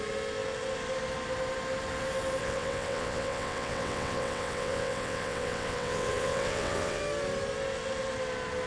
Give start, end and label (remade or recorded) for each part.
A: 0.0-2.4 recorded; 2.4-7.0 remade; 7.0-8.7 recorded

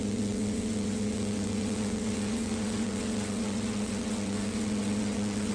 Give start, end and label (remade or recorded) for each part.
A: 0.0-5.5 remade

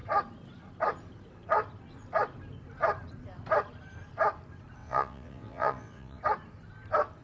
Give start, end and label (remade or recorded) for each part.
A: 0.0-4.8 recorded; 4.8-6.2 remade; 6.2-7.2 recorded

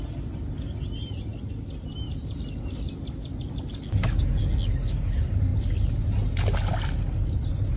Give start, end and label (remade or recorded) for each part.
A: 0.0-7.8 recorded

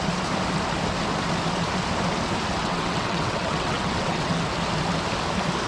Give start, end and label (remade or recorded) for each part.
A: 0.0-2.6 recorded; 2.6-4.3 remade; 4.3-5.7 recorded

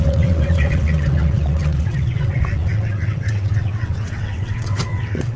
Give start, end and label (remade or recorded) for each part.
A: 0.0-5.4 remade

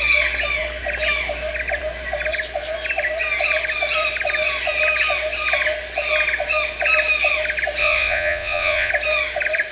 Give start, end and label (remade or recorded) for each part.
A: 0.0-7.8 recorded; 7.8-8.9 remade; 8.9-9.7 recorded

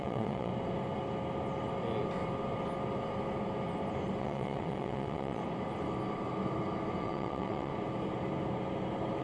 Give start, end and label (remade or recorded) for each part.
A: 0.0-0.5 remade; 0.5-4.2 recorded; 4.2-5.4 remade; 5.4-7.0 recorded; 7.0-7.7 remade; 7.7-9.2 recorded